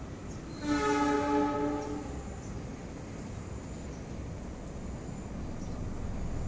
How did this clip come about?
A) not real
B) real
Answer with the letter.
B